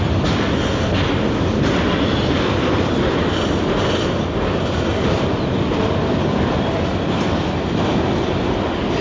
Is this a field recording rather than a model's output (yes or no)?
yes